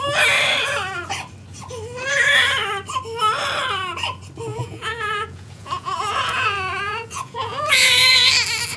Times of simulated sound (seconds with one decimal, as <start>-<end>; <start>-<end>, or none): 4.5-8.3